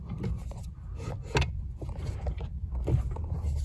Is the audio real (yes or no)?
yes